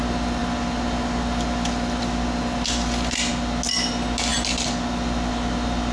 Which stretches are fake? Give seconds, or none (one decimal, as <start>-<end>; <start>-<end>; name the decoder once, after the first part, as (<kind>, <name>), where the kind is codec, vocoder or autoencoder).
none